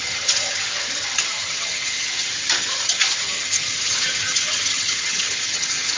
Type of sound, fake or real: fake